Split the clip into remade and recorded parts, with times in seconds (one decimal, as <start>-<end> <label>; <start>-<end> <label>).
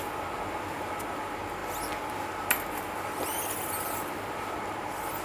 0.0-5.2 recorded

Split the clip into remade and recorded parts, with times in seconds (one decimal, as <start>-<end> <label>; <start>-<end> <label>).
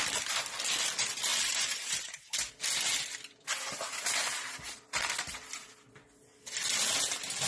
0.0-1.3 recorded; 1.3-2.5 remade; 2.5-7.5 recorded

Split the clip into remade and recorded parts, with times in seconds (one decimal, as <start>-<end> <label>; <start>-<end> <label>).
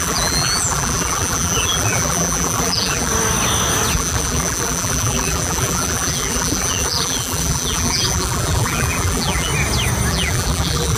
0.0-3.1 remade; 3.1-3.9 recorded; 3.9-9.5 remade; 9.5-10.1 recorded; 10.1-11.0 remade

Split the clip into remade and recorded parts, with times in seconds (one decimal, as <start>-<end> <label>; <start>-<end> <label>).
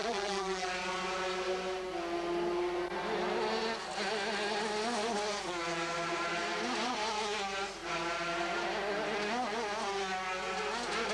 0.0-0.7 remade; 0.7-11.1 recorded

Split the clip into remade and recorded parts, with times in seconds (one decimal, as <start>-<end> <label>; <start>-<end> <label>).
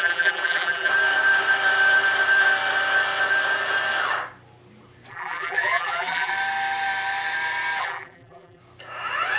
0.0-0.9 remade; 0.9-5.1 recorded; 5.1-6.3 remade; 6.3-7.8 recorded; 7.8-8.6 remade; 8.6-9.4 recorded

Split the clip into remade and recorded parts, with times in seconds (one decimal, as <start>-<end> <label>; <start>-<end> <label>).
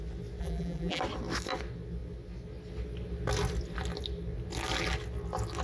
0.0-0.4 recorded; 0.4-1.0 remade; 1.0-5.6 recorded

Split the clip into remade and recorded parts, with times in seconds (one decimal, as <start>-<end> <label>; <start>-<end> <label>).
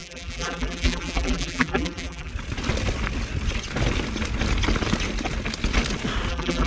0.0-2.3 remade; 2.3-6.3 recorded; 6.3-6.7 remade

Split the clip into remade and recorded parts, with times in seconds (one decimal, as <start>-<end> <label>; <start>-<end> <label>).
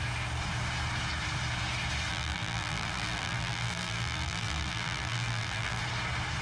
0.0-2.1 recorded; 2.1-5.8 remade; 5.8-6.4 recorded